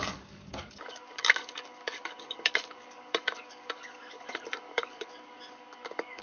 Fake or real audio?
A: fake